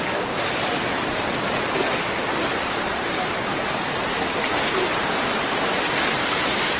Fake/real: real